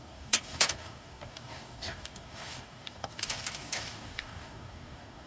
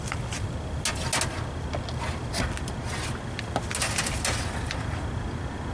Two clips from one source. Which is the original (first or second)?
second